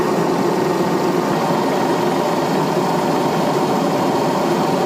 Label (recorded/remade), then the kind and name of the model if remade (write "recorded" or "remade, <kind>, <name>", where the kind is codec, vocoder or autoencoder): recorded